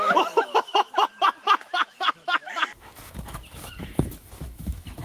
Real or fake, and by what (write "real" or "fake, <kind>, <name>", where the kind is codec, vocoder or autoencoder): fake, autoencoder, DAC-VAE